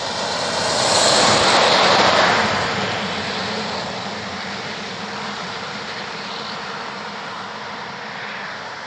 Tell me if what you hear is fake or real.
fake